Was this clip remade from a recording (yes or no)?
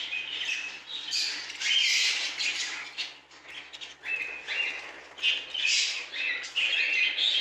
no